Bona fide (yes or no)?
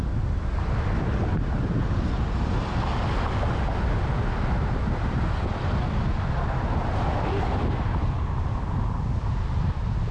yes